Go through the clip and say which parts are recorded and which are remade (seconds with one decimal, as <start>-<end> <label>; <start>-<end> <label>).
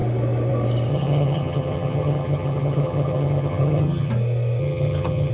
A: 0.0-0.9 recorded; 0.9-4.1 remade; 4.1-4.6 recorded; 4.6-5.3 remade